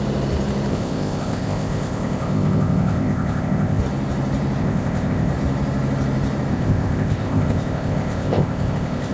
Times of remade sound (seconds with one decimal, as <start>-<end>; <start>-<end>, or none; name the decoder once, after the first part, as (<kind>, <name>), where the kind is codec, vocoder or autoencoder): 0.7-3.8 (codec, ZipCodec); 4.6-5.3; 6.5-9.1